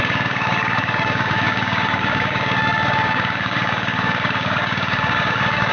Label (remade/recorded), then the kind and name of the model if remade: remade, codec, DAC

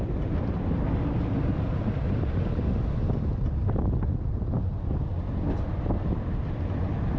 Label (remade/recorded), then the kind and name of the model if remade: remade, vocoder, BigVGAN v2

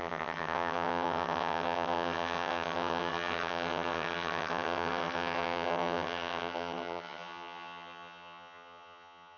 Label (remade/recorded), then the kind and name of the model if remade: remade, vocoder, HiFi-GAN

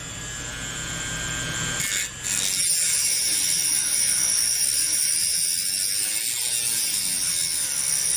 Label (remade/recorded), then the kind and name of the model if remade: recorded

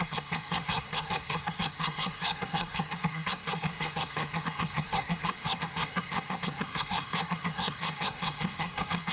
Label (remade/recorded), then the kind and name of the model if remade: remade, codec, SNAC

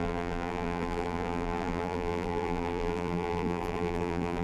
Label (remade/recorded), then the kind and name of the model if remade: remade, vocoder, BigVGAN v2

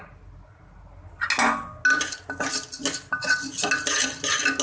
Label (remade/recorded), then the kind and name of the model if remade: recorded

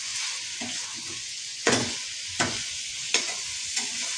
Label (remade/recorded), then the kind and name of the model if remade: remade, vocoder, Vocos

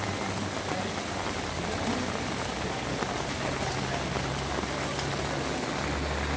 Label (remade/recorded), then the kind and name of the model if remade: recorded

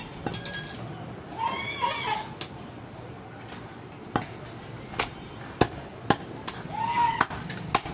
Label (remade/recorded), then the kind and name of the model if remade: recorded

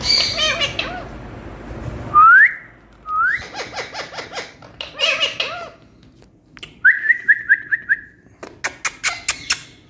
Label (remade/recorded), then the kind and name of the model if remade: recorded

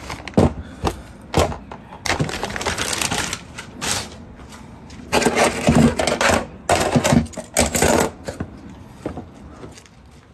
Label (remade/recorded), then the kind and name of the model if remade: recorded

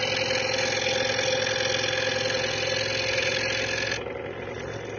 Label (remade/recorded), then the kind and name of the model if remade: recorded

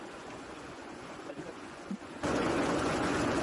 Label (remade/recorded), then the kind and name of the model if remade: remade, vocoder, Vocos